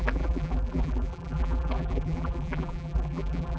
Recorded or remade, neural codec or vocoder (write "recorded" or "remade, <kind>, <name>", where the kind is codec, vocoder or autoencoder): remade, vocoder, BigVGAN v2